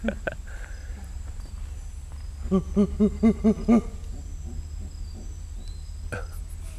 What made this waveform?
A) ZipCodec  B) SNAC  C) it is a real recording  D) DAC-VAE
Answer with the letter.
C